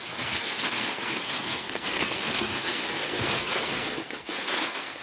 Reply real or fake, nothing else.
fake